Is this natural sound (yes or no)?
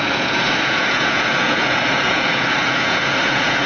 no